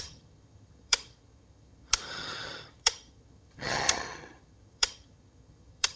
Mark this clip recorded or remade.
remade